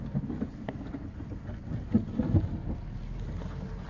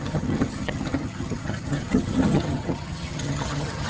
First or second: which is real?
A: first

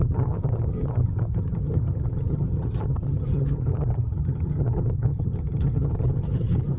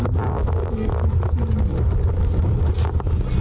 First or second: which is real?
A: second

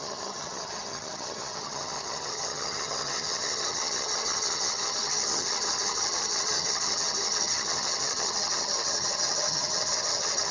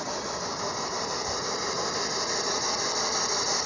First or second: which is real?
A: second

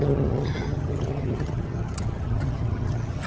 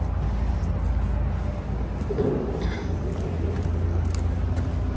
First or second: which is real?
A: second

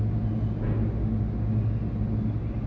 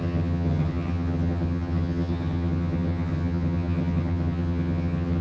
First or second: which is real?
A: first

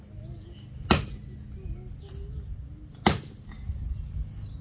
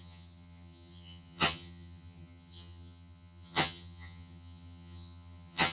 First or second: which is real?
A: first